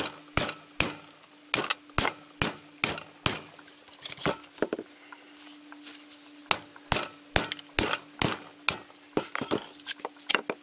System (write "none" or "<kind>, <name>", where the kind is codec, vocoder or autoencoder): none